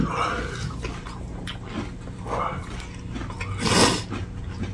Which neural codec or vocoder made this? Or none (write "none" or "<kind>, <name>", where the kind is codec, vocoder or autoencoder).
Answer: none